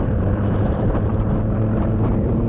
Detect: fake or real fake